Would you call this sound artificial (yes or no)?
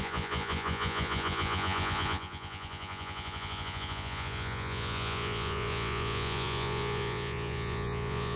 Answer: yes